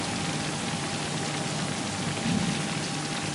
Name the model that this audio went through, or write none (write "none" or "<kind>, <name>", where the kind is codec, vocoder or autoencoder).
none